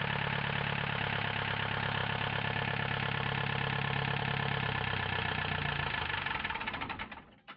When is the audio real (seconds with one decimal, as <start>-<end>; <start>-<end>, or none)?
0.0-7.6